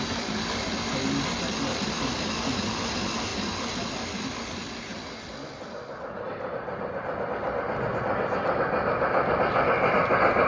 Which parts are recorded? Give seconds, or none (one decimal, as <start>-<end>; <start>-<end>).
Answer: 0.0-10.5